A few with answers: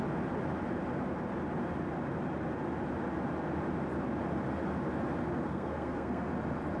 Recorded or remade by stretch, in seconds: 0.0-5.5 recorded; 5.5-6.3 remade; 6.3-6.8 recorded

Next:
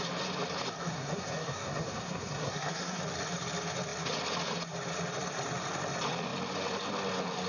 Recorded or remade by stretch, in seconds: 0.0-0.7 recorded; 0.7-3.0 remade; 3.0-7.5 recorded

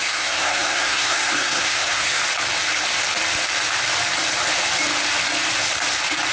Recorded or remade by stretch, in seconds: 0.0-2.2 remade; 2.2-6.3 recorded